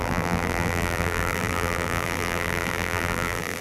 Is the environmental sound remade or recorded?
remade